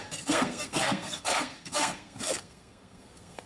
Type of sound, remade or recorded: remade